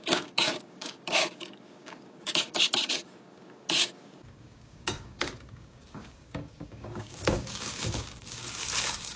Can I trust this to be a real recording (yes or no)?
no